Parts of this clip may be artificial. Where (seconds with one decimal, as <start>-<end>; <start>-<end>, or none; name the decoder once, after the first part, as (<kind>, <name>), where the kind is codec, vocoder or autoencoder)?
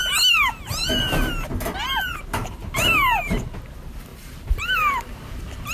2.4-3.5 (vocoder, BigVGAN v2); 4.1-5.3